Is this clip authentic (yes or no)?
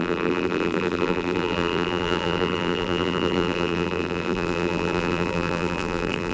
no